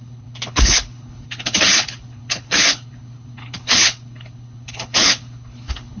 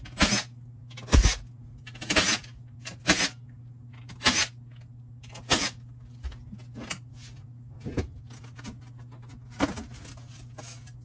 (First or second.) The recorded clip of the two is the second